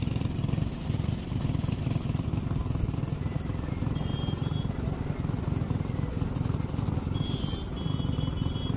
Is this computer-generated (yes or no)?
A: no